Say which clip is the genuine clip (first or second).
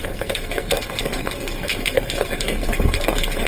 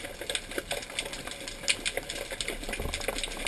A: second